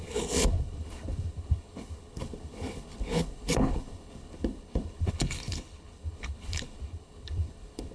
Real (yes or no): no